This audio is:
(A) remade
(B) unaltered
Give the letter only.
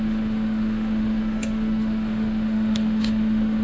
A